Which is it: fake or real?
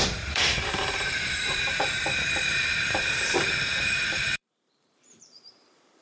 fake